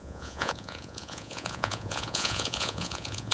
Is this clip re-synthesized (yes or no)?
yes